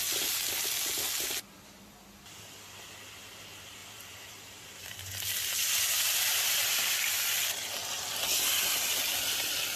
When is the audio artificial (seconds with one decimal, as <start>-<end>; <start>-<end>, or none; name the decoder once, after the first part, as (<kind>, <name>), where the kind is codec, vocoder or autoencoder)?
3.8-8.0 (vocoder, BigVGAN v2)

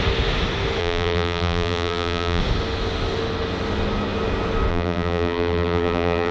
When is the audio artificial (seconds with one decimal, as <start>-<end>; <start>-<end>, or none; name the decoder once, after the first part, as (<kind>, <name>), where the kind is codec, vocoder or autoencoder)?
0.8-2.4 (vocoder, BigVGAN v2); 4.7-6.3